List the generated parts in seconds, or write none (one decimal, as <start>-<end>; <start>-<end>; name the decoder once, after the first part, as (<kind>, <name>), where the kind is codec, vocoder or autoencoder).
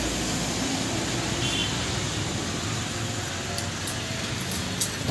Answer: none